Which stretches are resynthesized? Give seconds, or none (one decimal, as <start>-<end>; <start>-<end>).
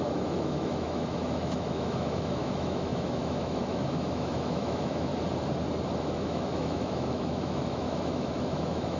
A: 0.0-5.1; 6.0-9.0